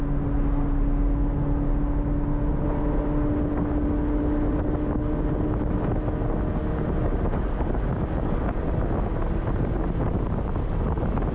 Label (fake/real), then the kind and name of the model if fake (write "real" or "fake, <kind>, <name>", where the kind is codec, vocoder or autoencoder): real